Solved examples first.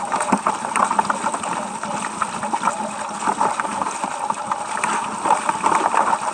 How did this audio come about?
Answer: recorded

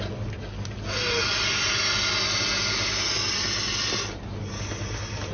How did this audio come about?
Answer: recorded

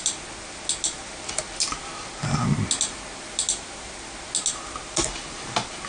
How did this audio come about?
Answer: recorded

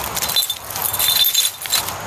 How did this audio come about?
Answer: recorded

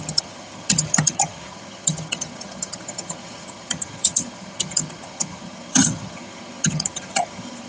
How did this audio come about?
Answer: remade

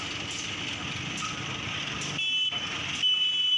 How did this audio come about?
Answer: recorded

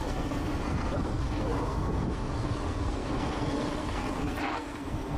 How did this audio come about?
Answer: remade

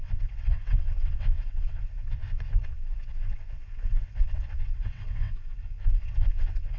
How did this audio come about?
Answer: remade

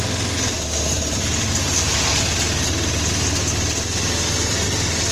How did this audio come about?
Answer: recorded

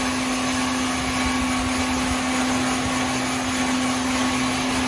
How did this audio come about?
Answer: recorded